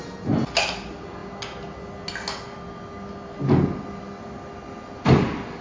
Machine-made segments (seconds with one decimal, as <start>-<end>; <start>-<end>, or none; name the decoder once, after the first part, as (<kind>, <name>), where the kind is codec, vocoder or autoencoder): none